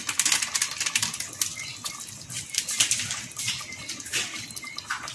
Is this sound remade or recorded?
recorded